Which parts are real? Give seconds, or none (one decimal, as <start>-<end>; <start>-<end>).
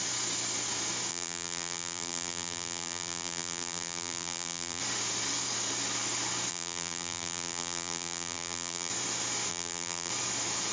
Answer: 0.0-1.1; 4.8-6.5; 8.9-9.5; 10.1-10.7